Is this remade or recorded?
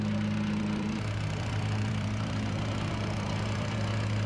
remade